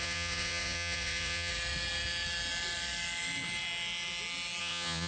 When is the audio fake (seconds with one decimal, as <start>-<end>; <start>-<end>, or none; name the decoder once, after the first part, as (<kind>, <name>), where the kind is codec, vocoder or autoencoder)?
0.0-1.5 (vocoder, Vocos); 4.6-5.1